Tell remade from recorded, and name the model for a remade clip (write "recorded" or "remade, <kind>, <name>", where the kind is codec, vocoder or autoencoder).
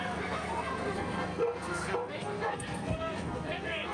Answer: remade, codec, SNAC